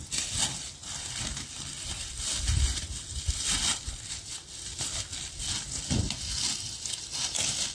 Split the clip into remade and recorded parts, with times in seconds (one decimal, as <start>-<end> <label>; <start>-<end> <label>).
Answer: 0.0-7.7 recorded